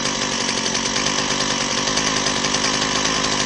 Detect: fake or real real